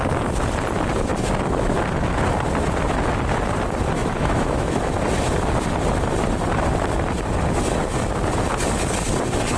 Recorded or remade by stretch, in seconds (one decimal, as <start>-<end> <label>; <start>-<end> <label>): 0.0-4.0 recorded; 4.0-4.7 remade; 4.7-9.6 recorded